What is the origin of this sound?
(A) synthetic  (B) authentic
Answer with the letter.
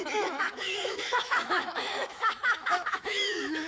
A